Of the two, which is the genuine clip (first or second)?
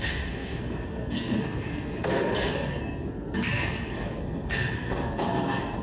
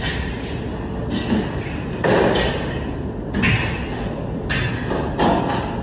second